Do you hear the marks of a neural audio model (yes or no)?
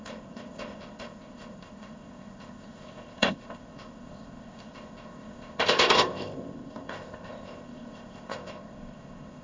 yes